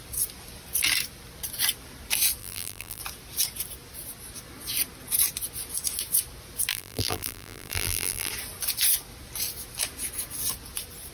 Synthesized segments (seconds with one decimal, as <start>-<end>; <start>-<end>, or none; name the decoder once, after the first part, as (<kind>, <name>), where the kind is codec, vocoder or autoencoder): 2.4-3.0 (vocoder, BigVGAN v2); 6.7-8.3